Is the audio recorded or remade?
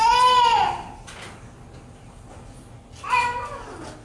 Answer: recorded